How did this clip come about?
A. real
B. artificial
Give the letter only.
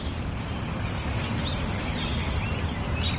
A